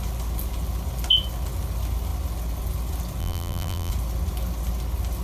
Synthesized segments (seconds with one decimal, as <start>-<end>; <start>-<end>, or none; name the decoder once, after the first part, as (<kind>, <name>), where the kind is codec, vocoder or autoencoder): 3.2-3.9 (vocoder, BigVGAN v2)